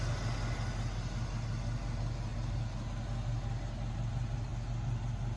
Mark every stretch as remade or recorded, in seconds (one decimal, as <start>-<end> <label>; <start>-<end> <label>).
0.0-5.4 recorded